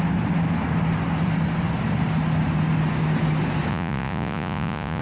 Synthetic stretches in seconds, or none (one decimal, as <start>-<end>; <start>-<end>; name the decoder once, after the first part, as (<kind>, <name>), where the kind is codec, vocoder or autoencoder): 3.7-5.0 (vocoder, Vocos)